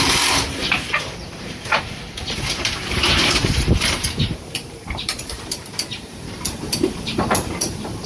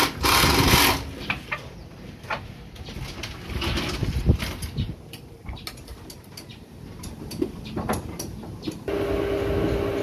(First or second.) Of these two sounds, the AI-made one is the first